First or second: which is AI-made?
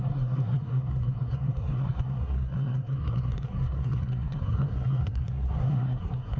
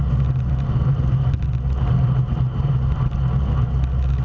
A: first